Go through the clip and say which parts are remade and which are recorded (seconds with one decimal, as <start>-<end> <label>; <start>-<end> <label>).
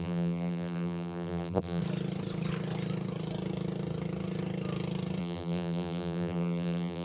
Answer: 0.0-1.8 remade; 1.8-5.2 recorded; 5.2-7.0 remade